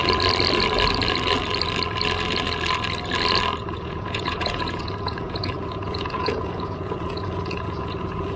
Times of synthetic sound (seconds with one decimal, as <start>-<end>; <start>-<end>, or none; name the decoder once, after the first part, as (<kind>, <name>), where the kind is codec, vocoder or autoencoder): 3.6-8.4 (vocoder, Vocos)